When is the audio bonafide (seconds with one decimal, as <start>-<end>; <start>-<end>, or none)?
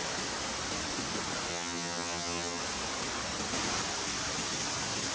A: 0.0-1.5; 2.6-5.1